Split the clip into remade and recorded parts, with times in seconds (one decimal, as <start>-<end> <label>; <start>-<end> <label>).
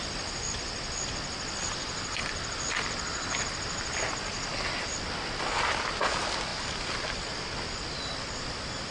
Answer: 0.0-1.8 recorded; 1.8-3.9 remade; 3.9-8.9 recorded